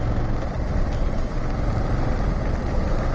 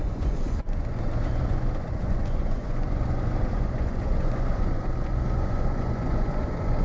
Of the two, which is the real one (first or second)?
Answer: first